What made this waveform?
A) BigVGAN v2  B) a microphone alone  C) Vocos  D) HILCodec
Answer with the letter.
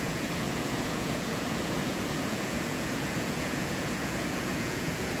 C